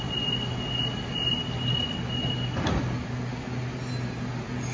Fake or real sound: real